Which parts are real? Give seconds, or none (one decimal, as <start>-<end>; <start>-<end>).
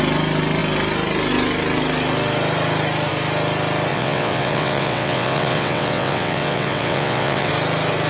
0.0-3.9; 7.5-8.1